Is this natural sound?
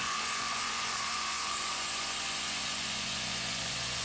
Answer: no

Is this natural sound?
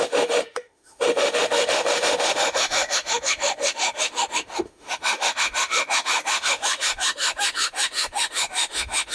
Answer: no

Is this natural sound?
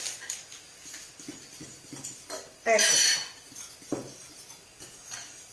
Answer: yes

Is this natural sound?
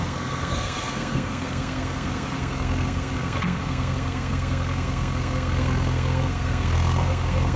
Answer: no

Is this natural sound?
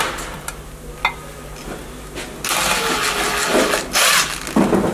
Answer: yes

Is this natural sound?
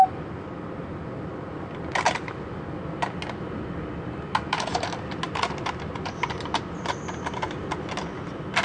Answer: yes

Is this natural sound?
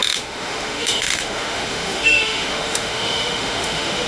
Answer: no